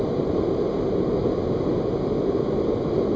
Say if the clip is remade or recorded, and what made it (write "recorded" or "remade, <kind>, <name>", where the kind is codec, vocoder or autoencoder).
recorded